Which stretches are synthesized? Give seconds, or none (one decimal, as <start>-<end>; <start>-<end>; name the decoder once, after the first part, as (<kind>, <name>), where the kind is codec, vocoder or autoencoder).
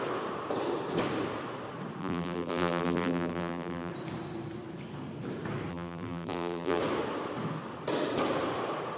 2.0-3.9 (vocoder, BigVGAN v2); 5.7-6.8